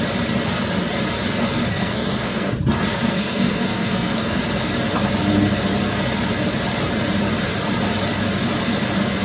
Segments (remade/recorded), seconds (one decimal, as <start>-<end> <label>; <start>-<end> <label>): 0.0-1.7 recorded; 1.7-2.5 remade; 2.5-2.9 recorded; 2.9-4.4 remade; 4.4-9.2 recorded